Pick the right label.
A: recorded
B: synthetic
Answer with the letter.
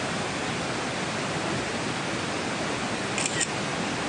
A